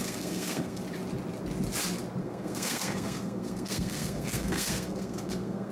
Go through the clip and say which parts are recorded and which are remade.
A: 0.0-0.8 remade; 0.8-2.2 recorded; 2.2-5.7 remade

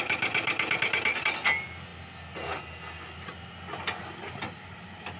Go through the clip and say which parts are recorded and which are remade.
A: 0.0-5.2 recorded

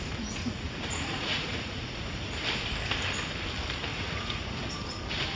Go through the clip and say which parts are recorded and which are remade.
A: 0.0-0.4 recorded; 0.4-2.3 remade; 2.3-3.9 recorded; 3.9-4.7 remade; 4.7-5.4 recorded